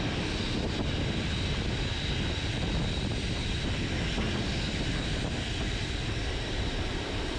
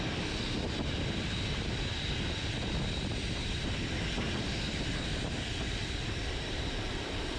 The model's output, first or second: second